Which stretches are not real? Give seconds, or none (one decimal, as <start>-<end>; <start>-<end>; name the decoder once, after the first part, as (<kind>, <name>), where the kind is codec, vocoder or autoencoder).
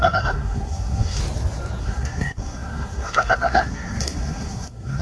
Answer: 0.0-1.2 (codec, SNAC); 1.8-5.0